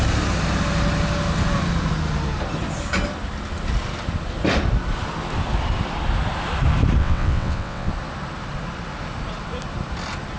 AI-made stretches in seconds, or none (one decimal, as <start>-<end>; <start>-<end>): 7.0-7.9

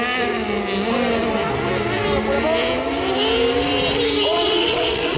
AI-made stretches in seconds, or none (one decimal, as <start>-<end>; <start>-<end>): 4.3-5.2

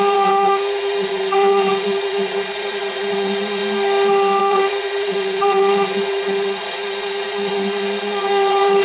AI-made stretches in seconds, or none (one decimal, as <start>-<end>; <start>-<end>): 0.0-3.6; 4.4-8.8

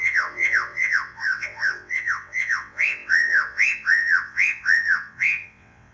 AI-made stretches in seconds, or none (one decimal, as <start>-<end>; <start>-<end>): 0.0-5.9

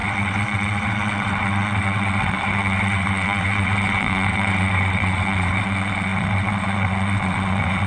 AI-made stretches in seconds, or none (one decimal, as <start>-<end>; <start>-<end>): 0.0-7.9